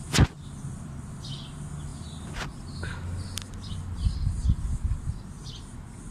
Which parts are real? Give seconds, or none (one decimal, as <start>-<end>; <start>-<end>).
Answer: 0.0-6.1